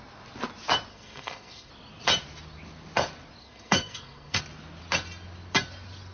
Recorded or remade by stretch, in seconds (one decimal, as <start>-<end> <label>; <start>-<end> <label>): 0.0-0.9 recorded; 0.9-1.7 remade; 1.7-3.4 recorded; 3.4-4.4 remade; 4.4-6.1 recorded